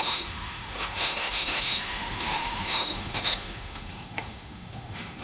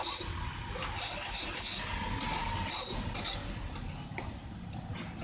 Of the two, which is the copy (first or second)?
first